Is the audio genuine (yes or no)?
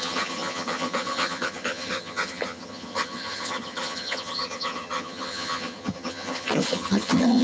no